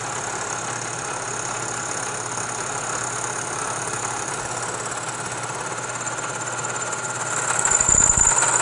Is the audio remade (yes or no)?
no